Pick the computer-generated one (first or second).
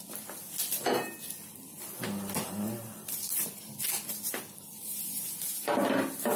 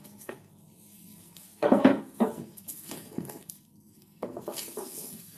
second